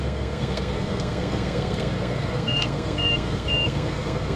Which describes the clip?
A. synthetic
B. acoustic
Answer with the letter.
A